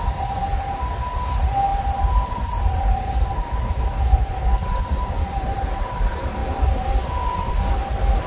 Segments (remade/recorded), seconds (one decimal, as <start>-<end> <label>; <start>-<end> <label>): 0.0-8.3 recorded